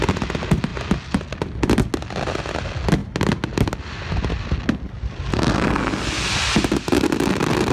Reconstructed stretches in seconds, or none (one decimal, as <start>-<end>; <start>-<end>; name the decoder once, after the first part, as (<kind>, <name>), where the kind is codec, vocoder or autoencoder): 5.3-6.0 (codec, SNAC)